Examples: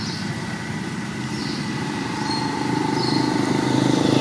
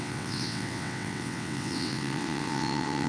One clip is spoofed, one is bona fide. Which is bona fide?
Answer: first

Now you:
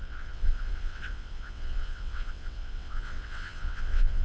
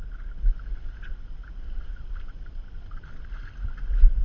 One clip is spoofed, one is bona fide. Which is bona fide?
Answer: second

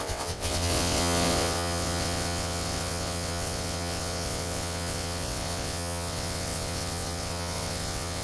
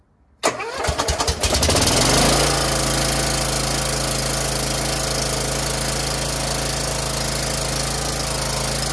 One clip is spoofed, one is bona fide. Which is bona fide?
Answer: second